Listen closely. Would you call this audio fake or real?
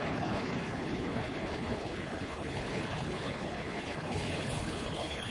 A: fake